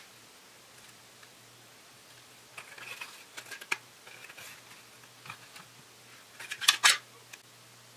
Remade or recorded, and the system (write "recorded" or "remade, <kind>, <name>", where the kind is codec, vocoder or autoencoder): recorded